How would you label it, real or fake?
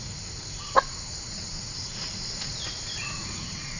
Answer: fake